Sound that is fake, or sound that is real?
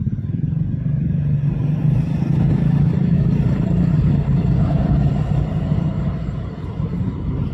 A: fake